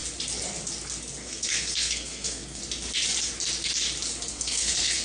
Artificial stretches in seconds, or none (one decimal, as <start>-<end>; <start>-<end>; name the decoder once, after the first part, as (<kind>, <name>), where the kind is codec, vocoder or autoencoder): 1.2-2.6 (codec, SNAC); 4.3-5.0